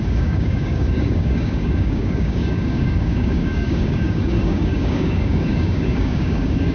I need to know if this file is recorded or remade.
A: remade